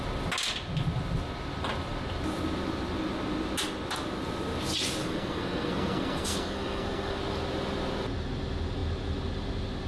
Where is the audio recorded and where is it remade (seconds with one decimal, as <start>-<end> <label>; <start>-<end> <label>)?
0.0-5.0 recorded; 5.0-7.2 remade; 7.2-9.9 recorded